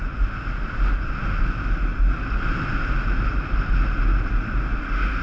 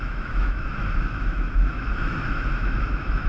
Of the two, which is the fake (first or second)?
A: second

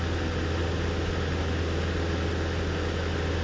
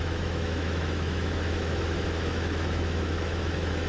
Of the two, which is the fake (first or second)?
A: second